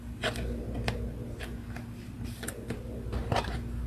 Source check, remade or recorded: recorded